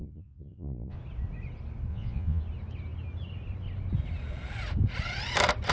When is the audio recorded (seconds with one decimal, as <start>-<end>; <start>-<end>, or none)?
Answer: 1.0-1.9; 2.4-5.7